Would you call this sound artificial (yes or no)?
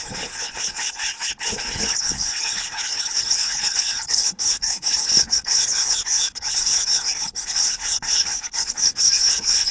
yes